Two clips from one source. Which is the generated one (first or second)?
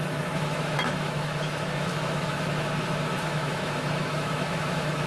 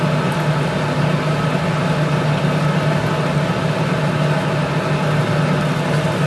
first